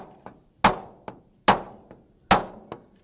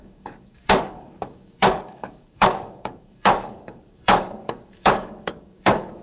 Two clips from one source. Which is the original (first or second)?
first